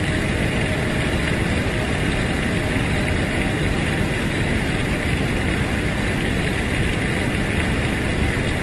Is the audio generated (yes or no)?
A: no